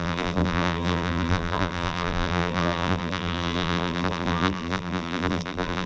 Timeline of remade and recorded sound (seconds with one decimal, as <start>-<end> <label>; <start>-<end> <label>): 0.0-5.9 remade

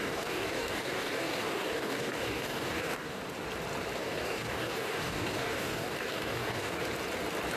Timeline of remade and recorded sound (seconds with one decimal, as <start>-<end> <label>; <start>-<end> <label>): 0.0-3.2 remade; 3.2-4.0 recorded; 4.0-6.8 remade; 6.8-7.6 recorded

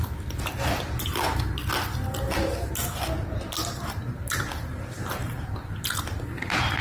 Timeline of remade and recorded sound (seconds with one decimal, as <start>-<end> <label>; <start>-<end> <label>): 0.0-3.6 recorded; 3.6-5.5 remade; 5.5-6.8 recorded

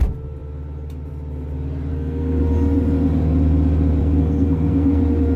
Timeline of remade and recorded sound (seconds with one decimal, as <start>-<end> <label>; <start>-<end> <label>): 0.0-1.9 recorded; 1.9-2.4 remade; 2.4-4.0 recorded; 4.0-5.0 remade; 5.0-5.4 recorded

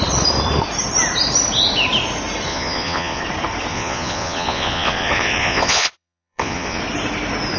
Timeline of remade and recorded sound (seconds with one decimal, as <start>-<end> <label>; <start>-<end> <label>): 0.0-2.5 recorded; 2.5-3.2 remade; 3.2-3.7 recorded; 3.7-6.8 remade; 6.8-7.6 recorded

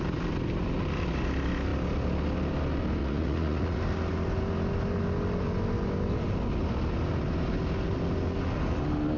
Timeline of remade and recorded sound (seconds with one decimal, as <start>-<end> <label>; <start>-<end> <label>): 0.0-3.0 recorded; 3.0-3.8 remade; 3.8-9.2 recorded

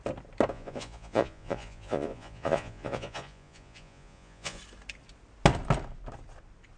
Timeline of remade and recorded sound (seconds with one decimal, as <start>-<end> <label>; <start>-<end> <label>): 0.0-0.5 recorded; 0.5-4.6 remade; 4.6-6.8 recorded